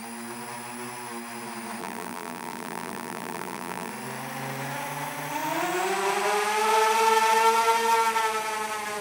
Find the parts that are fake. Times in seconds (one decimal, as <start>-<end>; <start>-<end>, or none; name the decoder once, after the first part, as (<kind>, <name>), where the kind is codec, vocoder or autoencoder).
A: 1.8-3.9 (vocoder, BigVGAN v2)